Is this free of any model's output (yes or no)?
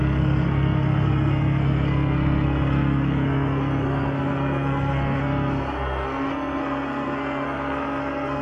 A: no